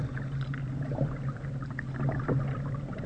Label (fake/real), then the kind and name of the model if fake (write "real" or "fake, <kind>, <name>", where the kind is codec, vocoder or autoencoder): real